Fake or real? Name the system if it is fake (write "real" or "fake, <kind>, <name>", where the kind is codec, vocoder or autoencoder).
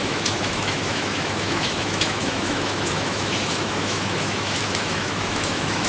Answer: fake, autoencoder, DAC-VAE